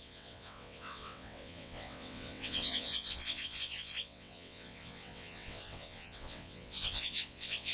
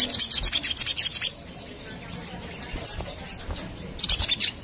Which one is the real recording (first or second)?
second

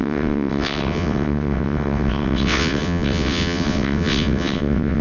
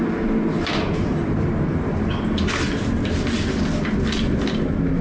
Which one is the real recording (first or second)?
second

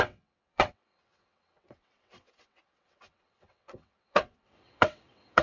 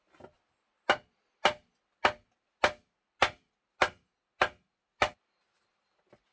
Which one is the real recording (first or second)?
second